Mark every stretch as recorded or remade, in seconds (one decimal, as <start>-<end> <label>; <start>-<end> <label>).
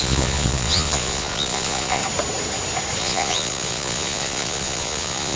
0.0-2.0 remade; 2.0-3.0 recorded; 3.0-5.4 remade